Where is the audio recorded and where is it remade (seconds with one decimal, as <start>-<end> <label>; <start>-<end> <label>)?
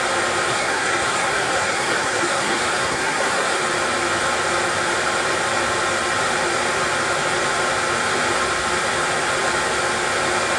0.0-0.5 recorded; 0.5-3.6 remade; 3.6-10.6 recorded